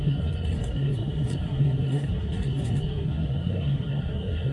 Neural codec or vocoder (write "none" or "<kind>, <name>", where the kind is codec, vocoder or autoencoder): codec, SNAC